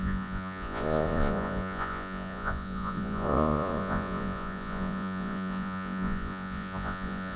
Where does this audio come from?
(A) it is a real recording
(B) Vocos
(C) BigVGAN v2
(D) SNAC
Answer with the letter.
B